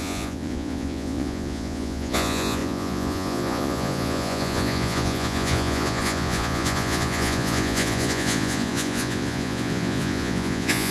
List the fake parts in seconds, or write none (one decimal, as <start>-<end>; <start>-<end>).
0.0-10.9